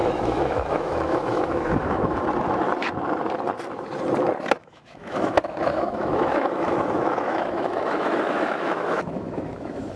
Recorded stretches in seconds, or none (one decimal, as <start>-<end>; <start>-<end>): 2.2-4.6